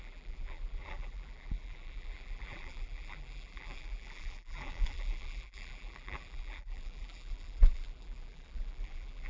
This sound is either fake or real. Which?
fake